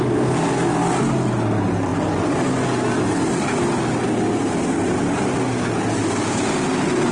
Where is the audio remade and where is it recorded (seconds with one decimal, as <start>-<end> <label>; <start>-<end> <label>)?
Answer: 0.0-7.1 recorded